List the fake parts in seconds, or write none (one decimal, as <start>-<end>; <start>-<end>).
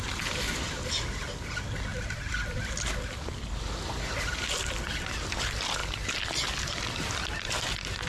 none